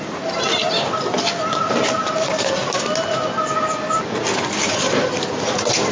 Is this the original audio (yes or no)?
yes